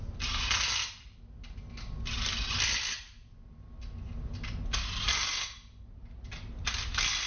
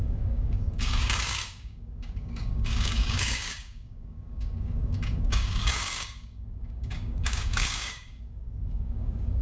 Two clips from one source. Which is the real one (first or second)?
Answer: first